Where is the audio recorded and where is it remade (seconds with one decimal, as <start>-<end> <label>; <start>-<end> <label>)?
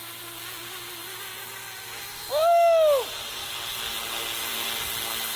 0.0-5.4 recorded